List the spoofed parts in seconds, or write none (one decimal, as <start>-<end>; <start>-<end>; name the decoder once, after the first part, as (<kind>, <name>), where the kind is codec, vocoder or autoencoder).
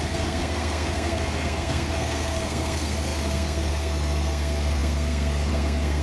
0.0-6.0 (codec, SNAC)